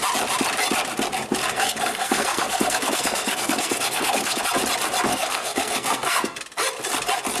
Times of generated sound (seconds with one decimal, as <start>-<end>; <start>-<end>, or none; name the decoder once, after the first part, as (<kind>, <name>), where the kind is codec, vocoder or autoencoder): 1.4-4.4 (codec, SNAC); 5.1-6.4